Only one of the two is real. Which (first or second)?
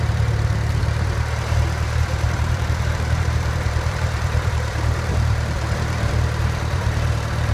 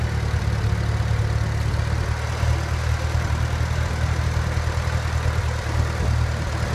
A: second